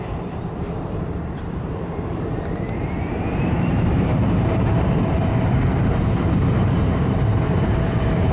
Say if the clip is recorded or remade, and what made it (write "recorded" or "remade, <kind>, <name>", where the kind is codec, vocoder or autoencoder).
remade, vocoder, BigVGAN v2